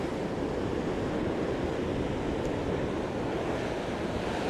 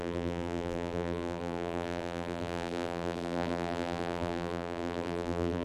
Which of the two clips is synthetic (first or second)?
second